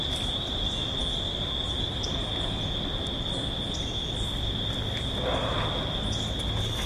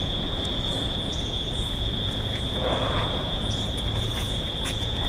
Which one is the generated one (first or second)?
second